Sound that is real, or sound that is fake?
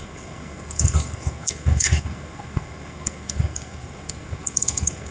fake